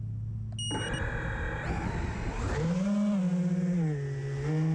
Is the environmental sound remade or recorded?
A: recorded